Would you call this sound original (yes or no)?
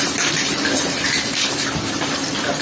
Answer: yes